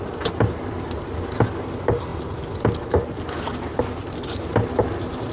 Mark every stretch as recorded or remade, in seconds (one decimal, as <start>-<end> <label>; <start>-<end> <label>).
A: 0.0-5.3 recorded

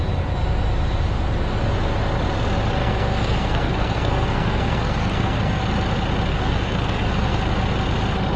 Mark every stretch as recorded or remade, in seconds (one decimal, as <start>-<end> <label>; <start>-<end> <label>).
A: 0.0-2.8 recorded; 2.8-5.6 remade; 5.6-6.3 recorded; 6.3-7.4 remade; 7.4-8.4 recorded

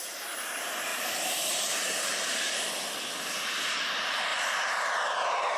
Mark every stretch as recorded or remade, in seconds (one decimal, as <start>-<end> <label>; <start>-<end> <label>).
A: 0.0-0.9 recorded; 0.9-2.7 remade; 2.7-4.3 recorded; 4.3-5.6 remade